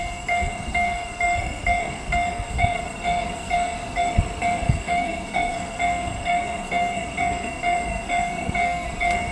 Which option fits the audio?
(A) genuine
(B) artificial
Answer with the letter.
B